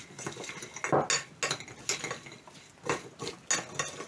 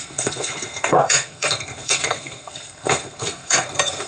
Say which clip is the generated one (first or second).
second